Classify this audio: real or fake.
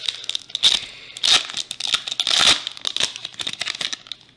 real